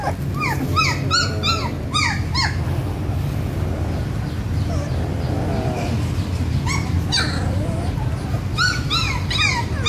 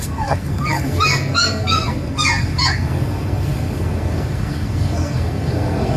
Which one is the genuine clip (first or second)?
first